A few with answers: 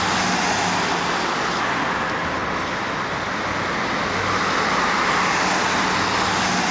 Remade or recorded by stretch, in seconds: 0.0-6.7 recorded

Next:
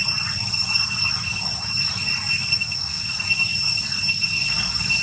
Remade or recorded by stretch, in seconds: 0.0-2.5 recorded; 2.5-3.0 remade; 3.0-5.0 recorded

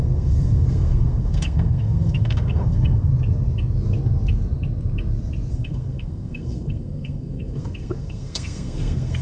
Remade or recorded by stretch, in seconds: 0.0-3.1 remade; 3.1-5.5 recorded; 5.5-9.2 remade

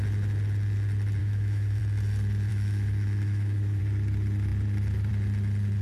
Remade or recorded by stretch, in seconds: 0.0-1.2 recorded; 1.2-1.8 remade; 1.8-2.5 recorded; 2.5-3.8 remade; 3.8-5.8 recorded

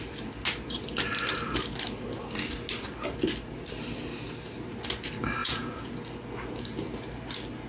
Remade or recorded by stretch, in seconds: 0.0-5.4 recorded; 5.4-5.9 remade; 5.9-7.7 recorded

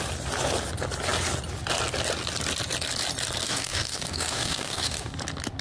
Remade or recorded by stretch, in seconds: 0.0-3.4 recorded; 3.4-5.1 remade; 5.1-5.6 recorded